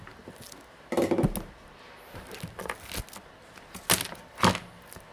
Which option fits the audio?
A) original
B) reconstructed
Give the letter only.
A